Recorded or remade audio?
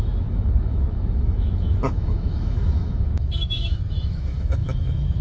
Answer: remade